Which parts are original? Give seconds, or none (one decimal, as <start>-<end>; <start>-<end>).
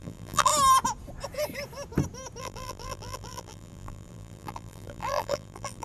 0.5-2.4